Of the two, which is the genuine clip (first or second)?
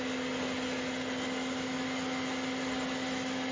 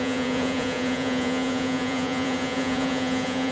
first